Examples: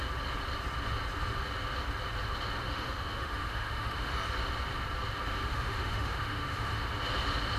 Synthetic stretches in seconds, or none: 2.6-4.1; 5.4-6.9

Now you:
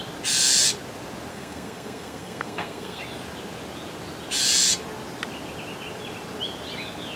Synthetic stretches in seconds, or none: 1.3-3.0

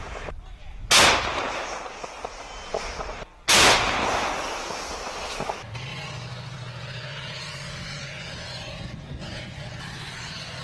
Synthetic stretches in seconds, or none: 5.9-10.6

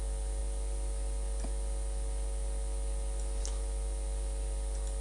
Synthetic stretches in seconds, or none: none

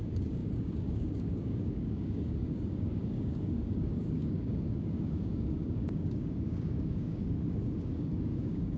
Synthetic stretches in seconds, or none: 0.0-8.8